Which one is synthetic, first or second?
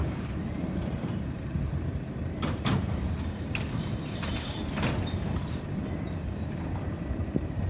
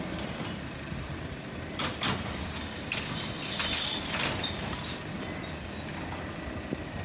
first